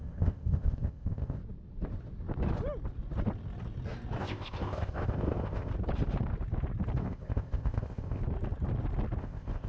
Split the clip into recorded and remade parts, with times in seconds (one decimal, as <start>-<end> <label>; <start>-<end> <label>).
0.0-1.4 remade; 1.4-4.2 recorded; 4.2-5.7 remade; 5.7-7.0 recorded; 7.0-8.2 remade; 8.2-9.2 recorded; 9.2-9.7 remade